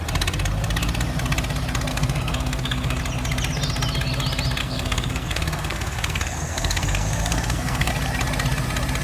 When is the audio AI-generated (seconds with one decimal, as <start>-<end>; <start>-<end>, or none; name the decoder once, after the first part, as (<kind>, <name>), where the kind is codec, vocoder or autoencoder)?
1.9-3.0 (codec, SNAC); 4.6-7.9